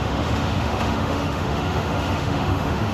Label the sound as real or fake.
fake